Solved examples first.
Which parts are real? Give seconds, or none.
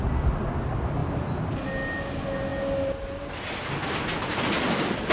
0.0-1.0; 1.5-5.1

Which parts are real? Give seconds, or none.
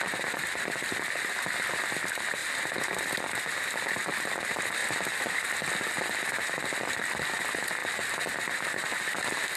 0.0-9.6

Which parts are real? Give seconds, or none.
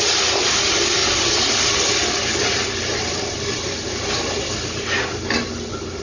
0.0-6.0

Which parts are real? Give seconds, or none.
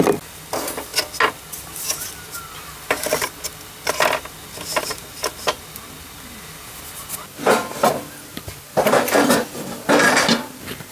0.0-4.7; 5.5-10.9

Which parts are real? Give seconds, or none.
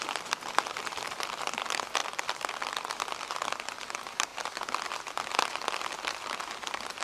0.0-2.0; 2.9-7.0